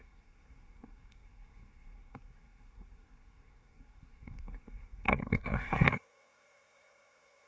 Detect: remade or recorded remade